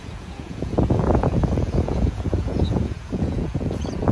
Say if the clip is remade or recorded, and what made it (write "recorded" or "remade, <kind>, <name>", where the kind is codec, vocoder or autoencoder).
remade, vocoder, Vocos